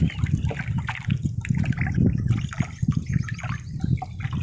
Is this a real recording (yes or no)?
yes